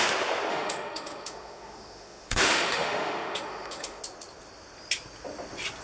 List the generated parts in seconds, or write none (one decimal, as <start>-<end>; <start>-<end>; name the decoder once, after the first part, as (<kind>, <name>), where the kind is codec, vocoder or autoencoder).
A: 0.5-4.0 (autoencoder, DAC-VAE)